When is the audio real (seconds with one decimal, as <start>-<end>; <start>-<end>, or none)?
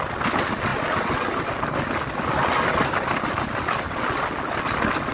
0.0-5.1